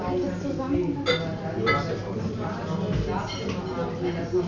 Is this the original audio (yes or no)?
yes